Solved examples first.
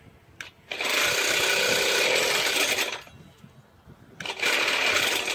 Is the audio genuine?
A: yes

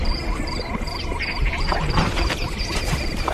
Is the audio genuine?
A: yes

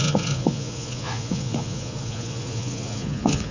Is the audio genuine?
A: no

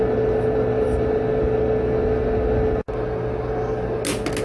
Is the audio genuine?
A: yes